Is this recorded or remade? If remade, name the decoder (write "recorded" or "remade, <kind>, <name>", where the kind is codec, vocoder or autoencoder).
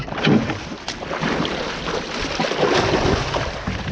recorded